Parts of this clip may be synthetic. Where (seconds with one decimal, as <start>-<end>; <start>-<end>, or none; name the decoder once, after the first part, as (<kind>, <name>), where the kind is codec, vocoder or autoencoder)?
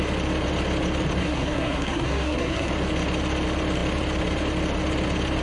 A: 1.2-2.7 (codec, SNAC)